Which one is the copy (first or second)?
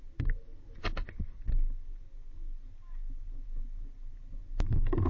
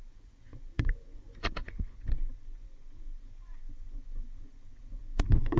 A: second